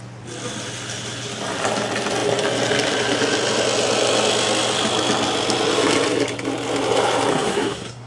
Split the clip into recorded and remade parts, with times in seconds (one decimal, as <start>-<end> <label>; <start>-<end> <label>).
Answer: 0.0-7.3 recorded; 7.3-8.1 remade